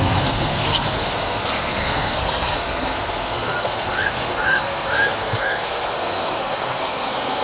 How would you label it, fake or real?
fake